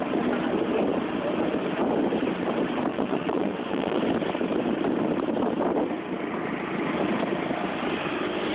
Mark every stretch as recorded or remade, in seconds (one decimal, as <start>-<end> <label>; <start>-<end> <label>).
0.0-2.9 recorded; 2.9-4.0 remade; 4.0-8.5 recorded